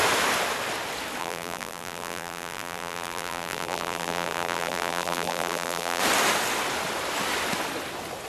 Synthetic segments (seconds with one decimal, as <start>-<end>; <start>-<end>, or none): 1.2-6.0